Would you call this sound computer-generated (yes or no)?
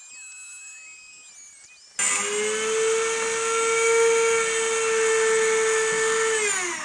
no